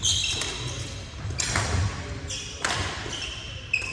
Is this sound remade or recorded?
recorded